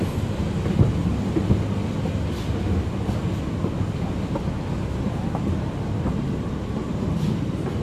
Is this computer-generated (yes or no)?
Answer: no